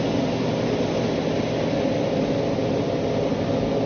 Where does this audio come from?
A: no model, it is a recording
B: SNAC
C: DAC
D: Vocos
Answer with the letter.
A